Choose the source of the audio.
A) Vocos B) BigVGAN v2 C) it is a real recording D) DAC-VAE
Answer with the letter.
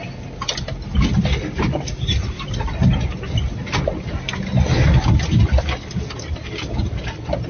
C